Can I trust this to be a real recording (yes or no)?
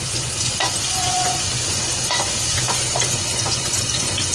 no